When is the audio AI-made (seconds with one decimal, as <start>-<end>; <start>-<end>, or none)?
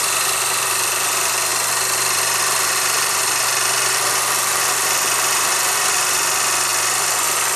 0.0-7.6